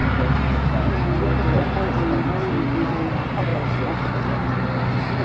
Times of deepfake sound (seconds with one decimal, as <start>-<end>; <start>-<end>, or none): none